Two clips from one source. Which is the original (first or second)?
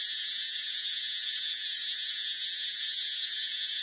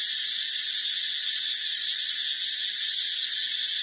second